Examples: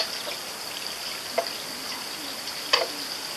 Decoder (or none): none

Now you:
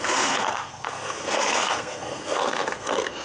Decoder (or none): codec, SNAC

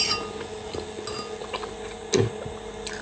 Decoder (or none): none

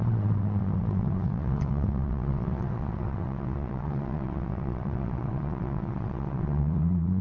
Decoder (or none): vocoder, WaveNeXt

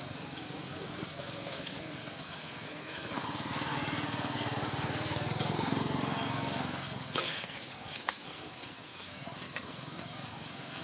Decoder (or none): codec, SNAC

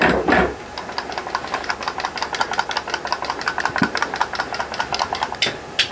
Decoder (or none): none